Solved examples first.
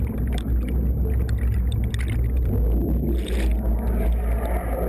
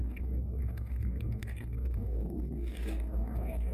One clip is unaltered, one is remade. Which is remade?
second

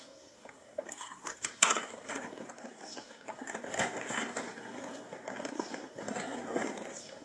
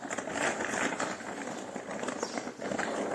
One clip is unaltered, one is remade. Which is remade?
first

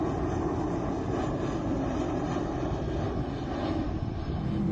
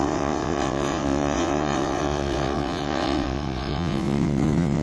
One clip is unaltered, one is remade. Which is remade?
second